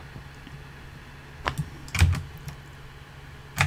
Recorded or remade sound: recorded